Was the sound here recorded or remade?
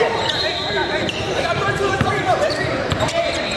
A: remade